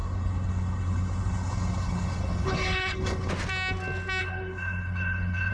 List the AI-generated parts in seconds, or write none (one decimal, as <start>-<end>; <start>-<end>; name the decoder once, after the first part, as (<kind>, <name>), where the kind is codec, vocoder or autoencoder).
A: 0.0-3.3 (codec, HILCodec); 4.2-5.5